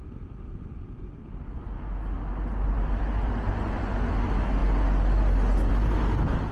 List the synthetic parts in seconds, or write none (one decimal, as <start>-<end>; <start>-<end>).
none